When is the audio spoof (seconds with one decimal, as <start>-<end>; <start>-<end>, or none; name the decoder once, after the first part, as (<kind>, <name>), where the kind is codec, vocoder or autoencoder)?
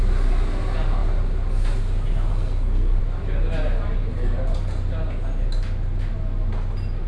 2.3-3.0 (codec, SNAC)